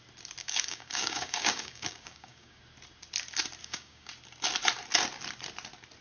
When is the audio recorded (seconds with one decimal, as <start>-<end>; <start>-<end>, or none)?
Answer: 0.0-0.4; 2.6-3.6; 4.1-6.0